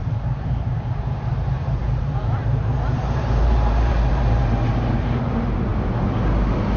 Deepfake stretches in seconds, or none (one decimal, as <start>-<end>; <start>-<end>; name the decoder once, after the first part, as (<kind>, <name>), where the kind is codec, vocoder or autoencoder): 0.0-5.7 (vocoder, BigVGAN v2)